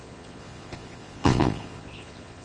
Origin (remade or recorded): remade